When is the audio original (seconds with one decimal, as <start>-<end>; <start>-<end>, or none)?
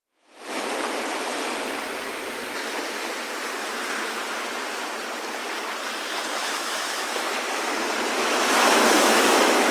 0.6-6.4; 7.3-8.2